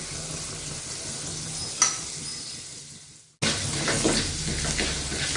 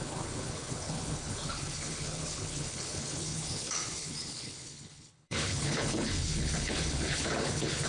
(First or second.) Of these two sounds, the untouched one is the first